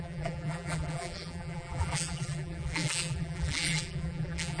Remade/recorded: remade